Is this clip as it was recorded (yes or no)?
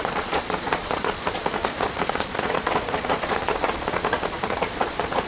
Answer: no